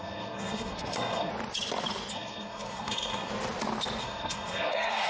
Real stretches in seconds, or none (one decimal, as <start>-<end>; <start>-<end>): 1.3-2.1; 3.3-4.0

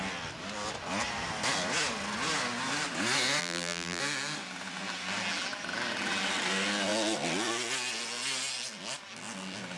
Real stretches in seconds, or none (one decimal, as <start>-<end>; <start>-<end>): 0.0-3.4; 4.0-9.8